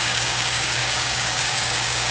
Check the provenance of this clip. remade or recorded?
remade